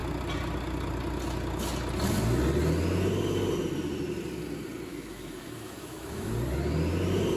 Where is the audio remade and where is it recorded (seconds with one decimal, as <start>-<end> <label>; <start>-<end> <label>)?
0.0-4.9 recorded; 4.9-6.3 remade; 6.3-7.4 recorded